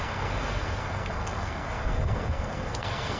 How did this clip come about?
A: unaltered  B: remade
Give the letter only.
B